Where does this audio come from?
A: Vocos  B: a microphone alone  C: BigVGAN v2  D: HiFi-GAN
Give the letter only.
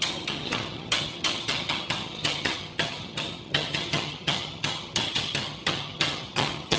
D